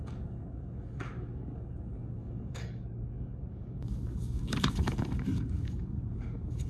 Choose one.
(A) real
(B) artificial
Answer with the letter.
B